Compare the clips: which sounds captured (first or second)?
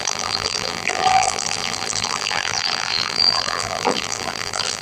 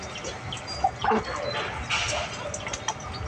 second